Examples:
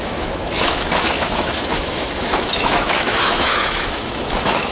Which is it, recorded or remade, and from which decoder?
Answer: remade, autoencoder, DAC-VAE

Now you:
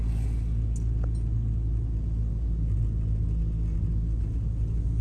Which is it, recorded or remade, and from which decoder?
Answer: recorded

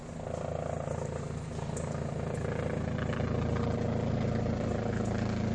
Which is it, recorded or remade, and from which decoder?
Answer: recorded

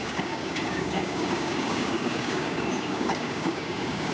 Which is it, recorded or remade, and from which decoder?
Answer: remade, codec, DAC